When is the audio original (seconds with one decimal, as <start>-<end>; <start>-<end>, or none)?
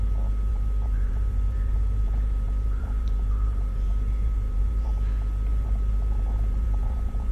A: 0.0-0.5; 4.9-5.5